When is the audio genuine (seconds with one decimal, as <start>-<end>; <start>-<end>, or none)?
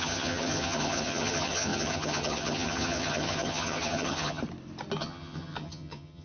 4.4-5.0